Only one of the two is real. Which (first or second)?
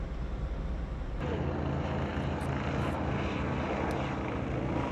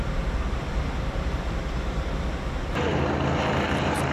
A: first